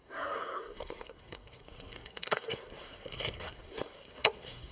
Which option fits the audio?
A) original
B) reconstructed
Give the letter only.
B